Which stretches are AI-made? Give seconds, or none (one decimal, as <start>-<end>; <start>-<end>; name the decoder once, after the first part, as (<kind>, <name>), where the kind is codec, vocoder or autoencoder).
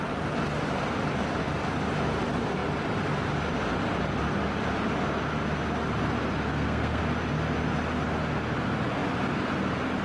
6.5-7.0 (codec, SNAC)